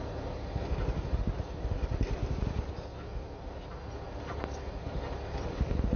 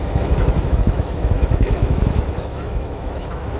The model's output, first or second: second